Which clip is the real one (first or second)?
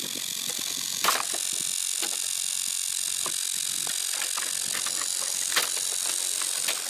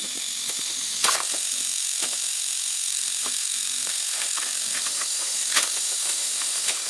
first